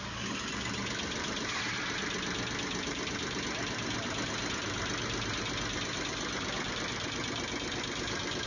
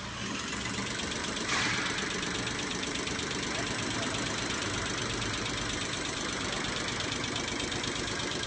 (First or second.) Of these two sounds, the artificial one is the second